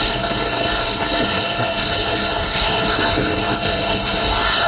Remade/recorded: remade